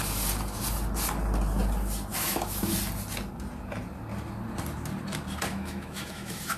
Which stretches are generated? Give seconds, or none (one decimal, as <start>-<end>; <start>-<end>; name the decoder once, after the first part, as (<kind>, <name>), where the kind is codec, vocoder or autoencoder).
2.1-2.7 (autoencoder, DAC-VAE); 5.5-6.6